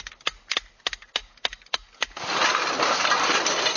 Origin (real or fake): real